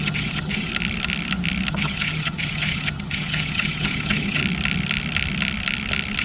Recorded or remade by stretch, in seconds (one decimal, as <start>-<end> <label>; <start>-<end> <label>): 0.0-0.7 remade; 0.7-1.7 recorded; 1.7-4.4 remade; 4.4-6.2 recorded